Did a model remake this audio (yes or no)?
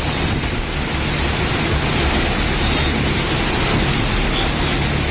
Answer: no